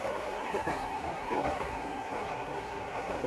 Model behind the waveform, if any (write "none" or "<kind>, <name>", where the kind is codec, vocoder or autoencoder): codec, SNAC